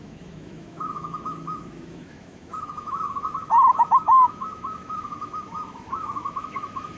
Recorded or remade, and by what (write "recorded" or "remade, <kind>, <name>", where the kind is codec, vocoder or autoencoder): remade, autoencoder, DAC-VAE